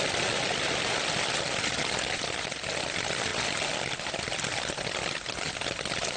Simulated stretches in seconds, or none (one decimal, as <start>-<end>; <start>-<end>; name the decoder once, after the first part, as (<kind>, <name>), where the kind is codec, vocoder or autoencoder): none